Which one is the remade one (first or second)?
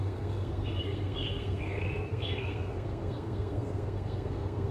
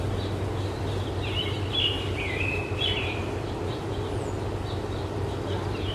first